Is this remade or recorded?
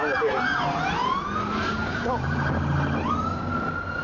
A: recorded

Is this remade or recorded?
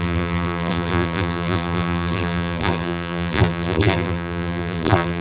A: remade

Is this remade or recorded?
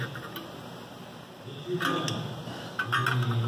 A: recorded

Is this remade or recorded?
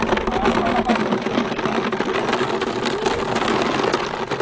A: recorded